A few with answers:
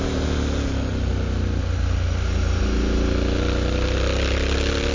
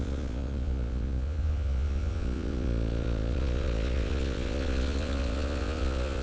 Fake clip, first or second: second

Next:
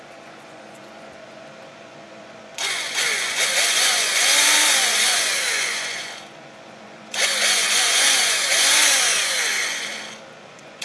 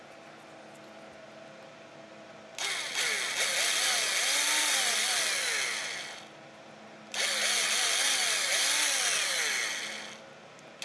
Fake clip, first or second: first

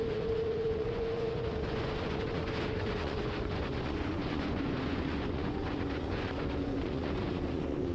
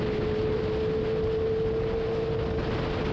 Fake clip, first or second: first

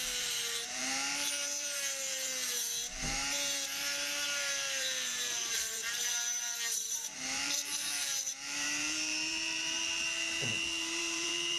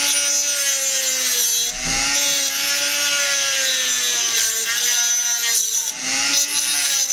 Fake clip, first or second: first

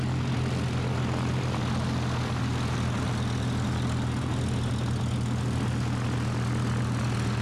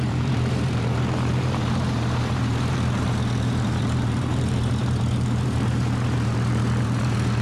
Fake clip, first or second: second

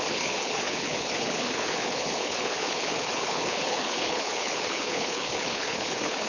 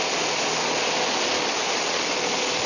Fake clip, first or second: first